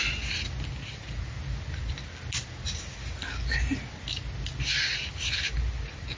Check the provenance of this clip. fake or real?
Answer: real